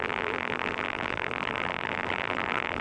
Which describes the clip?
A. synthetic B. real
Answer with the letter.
A